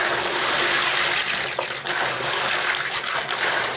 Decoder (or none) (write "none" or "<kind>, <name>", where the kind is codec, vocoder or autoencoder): none